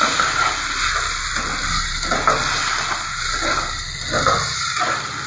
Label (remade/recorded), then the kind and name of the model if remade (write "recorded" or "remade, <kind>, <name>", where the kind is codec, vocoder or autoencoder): recorded